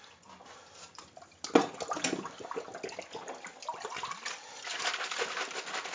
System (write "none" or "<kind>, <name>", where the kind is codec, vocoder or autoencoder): none